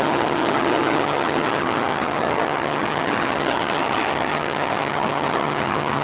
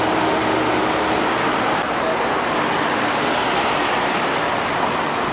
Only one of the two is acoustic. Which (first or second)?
second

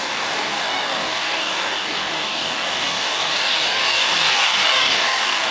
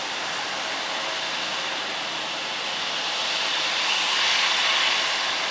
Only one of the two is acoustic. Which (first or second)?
second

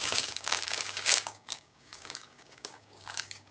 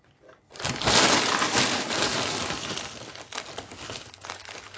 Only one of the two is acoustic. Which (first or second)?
second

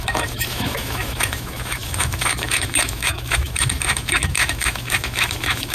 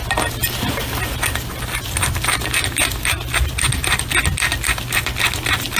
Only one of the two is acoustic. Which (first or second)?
second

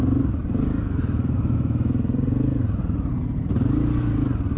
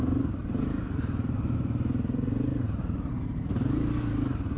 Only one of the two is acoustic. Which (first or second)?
first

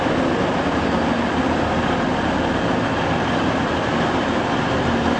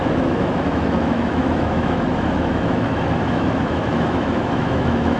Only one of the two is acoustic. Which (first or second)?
first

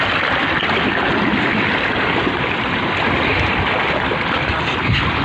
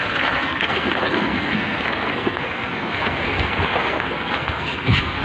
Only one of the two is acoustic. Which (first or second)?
first